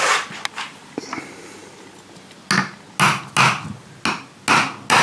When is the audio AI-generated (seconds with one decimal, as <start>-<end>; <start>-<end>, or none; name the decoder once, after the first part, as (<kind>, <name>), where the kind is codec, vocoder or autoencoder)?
none